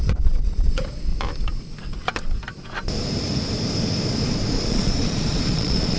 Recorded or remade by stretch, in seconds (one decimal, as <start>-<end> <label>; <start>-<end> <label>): 0.0-1.1 remade; 1.1-4.7 recorded; 4.7-6.0 remade